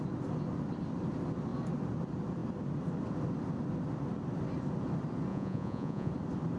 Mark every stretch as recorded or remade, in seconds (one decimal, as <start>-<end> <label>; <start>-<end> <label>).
0.0-5.3 recorded; 5.3-6.1 remade; 6.1-6.6 recorded